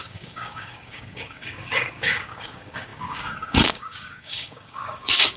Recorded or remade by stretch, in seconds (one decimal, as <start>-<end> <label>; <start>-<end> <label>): 0.0-5.4 remade

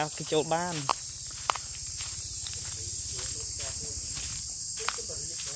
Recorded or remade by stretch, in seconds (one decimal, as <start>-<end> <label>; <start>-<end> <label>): 0.0-5.6 recorded

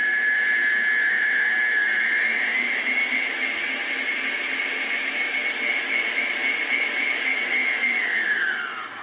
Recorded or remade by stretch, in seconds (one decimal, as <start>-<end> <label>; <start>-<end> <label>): 0.0-9.0 recorded

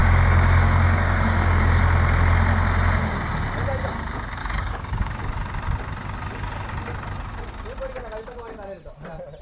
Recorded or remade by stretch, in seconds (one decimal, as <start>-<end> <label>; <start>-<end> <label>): 0.0-1.8 remade; 1.8-4.4 recorded; 4.4-5.2 remade; 5.2-9.4 recorded

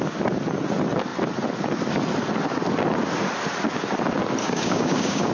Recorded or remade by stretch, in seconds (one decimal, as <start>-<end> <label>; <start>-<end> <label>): 0.0-4.4 recorded; 4.4-5.3 remade

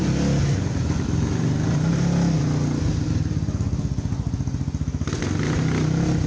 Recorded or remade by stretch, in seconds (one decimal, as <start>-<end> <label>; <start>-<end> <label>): 0.0-6.3 recorded

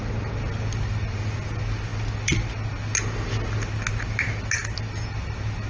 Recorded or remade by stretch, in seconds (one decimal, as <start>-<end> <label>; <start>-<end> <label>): 0.0-5.7 recorded

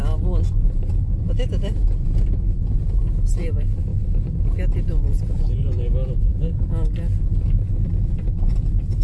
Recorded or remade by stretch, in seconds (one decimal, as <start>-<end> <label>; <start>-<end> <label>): 0.0-9.0 recorded